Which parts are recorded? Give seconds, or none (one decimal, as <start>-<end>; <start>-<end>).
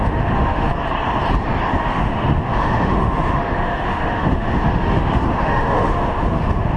0.7-1.8